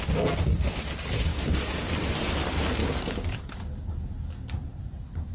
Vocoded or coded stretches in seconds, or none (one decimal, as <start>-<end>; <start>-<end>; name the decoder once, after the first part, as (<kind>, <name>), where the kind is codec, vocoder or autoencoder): 1.3-1.9 (codec, DAC); 2.8-3.5